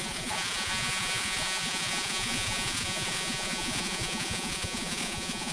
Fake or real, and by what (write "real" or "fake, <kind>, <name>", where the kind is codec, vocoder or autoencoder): fake, vocoder, Vocos